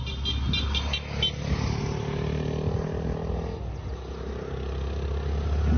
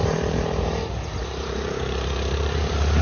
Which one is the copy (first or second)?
second